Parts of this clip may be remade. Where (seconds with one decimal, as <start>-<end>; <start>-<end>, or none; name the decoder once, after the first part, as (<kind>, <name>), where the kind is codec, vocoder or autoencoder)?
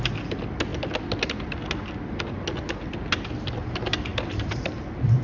none